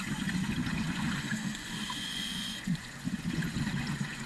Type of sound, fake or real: fake